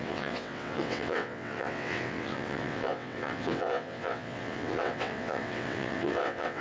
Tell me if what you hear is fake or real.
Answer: fake